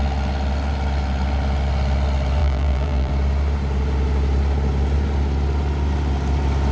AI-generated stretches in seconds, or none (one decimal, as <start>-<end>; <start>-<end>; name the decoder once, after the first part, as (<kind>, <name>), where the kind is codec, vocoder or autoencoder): 2.4-3.1 (vocoder, BigVGAN v2)